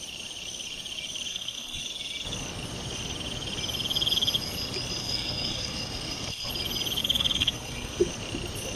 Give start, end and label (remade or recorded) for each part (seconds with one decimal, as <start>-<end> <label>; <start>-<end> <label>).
0.0-1.3 recorded; 1.3-1.8 remade; 1.8-5.0 recorded; 5.0-6.5 remade; 6.5-7.0 recorded; 7.0-8.1 remade; 8.1-8.8 recorded